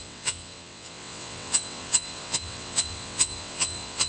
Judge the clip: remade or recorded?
remade